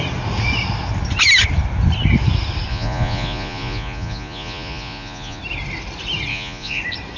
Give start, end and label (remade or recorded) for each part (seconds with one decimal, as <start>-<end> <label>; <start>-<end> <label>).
0.0-2.7 recorded; 2.7-5.4 remade; 5.4-6.3 recorded; 6.3-6.8 remade; 6.8-7.2 recorded